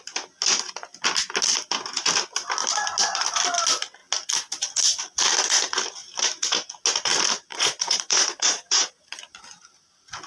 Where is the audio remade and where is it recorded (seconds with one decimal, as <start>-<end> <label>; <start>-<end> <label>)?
0.0-7.5 recorded; 7.5-9.7 remade; 9.7-10.3 recorded